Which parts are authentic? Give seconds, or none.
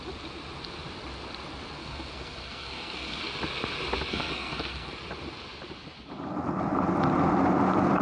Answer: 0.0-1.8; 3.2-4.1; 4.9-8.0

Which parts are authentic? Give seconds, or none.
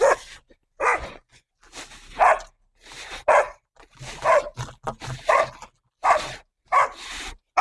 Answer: 0.0-0.9; 1.5-7.6